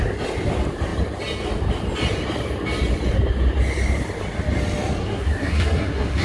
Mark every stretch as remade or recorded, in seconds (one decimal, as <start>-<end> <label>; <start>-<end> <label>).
0.0-5.0 recorded; 5.0-6.2 remade